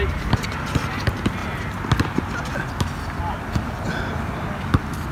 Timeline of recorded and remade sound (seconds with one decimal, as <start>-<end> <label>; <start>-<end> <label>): 0.0-5.1 recorded